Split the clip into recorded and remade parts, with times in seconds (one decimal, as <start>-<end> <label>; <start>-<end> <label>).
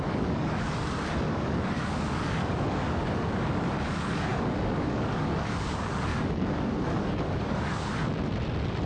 0.0-7.9 remade; 7.9-8.9 recorded